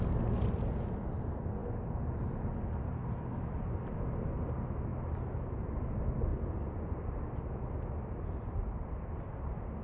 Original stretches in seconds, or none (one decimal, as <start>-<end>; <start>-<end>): 0.0-9.8